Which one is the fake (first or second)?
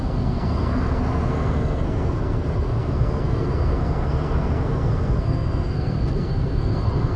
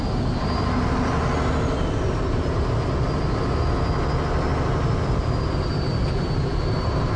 first